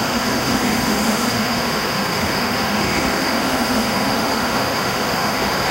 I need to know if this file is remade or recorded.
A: remade